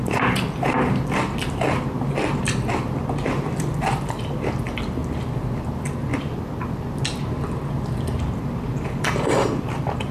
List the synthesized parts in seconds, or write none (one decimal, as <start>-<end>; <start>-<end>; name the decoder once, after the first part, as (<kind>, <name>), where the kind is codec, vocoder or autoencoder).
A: 0.0-5.0 (vocoder, BigVGAN v2); 7.2-10.1